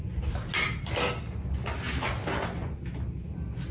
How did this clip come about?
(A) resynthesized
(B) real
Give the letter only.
B